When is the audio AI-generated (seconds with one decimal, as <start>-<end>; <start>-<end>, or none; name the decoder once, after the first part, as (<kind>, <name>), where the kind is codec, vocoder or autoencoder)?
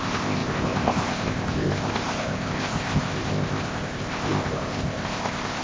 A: 0.0-5.6 (codec, ZipCodec)